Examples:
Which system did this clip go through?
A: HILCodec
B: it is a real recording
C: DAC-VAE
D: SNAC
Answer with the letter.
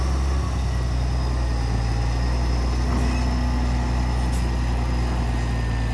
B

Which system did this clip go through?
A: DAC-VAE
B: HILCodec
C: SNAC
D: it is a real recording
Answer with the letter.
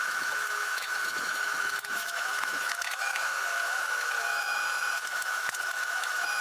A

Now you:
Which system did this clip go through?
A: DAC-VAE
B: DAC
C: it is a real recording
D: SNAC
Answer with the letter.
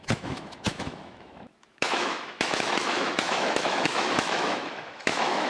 A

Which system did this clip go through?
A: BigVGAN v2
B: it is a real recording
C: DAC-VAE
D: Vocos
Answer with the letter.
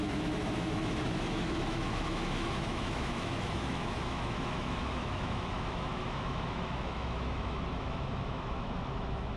C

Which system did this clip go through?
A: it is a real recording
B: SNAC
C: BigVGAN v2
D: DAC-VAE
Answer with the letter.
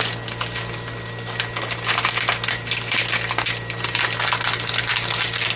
A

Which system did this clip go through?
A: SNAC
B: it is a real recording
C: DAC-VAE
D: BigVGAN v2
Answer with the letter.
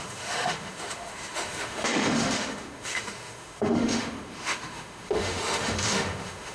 C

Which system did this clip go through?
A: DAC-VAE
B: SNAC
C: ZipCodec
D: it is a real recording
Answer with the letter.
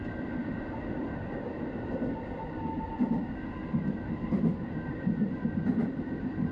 D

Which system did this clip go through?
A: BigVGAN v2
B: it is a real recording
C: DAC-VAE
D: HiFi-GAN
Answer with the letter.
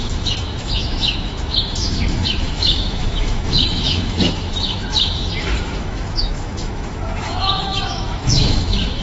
C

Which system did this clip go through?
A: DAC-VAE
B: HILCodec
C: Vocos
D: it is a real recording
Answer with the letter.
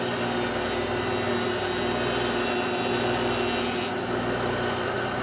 D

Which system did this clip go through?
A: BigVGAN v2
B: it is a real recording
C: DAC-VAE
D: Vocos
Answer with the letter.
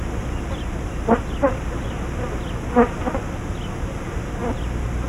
B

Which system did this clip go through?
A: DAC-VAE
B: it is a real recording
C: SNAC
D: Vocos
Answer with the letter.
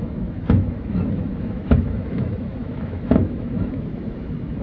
A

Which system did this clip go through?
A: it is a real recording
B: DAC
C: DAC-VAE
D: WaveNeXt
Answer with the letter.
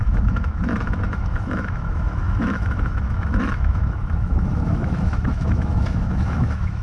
C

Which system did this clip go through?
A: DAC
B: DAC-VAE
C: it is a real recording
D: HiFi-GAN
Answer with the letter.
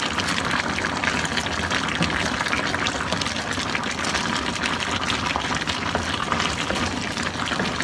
C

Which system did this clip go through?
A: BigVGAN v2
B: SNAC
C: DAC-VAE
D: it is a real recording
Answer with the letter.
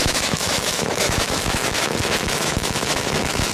C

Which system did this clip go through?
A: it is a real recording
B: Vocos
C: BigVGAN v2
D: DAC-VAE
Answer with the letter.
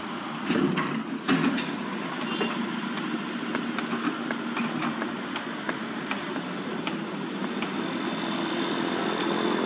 A